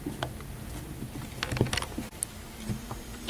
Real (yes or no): yes